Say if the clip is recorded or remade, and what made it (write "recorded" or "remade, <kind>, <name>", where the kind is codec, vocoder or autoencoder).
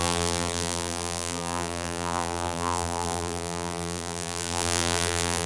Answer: remade, vocoder, BigVGAN v2